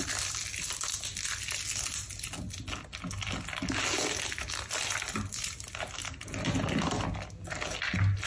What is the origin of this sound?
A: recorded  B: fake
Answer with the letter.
A